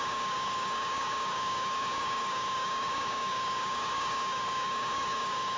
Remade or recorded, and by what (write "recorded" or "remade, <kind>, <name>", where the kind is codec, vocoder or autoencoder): remade, codec, DAC